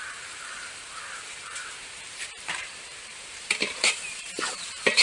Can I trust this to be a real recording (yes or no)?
no